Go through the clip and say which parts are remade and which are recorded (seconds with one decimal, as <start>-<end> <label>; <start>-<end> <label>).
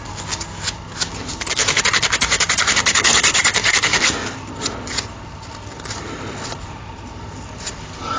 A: 0.0-8.2 recorded